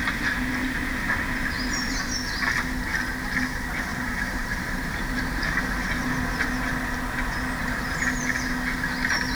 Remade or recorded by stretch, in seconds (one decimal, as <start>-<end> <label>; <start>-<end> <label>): 0.0-0.6 recorded; 0.6-2.0 remade; 2.0-3.9 recorded; 3.9-5.6 remade; 5.6-7.6 recorded; 7.6-8.2 remade; 8.2-9.3 recorded